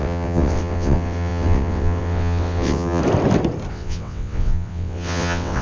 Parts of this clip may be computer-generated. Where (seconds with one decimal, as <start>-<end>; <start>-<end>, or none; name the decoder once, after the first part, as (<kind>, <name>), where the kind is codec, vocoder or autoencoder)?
0.0-3.0 (vocoder, WaveNeXt); 3.7-5.6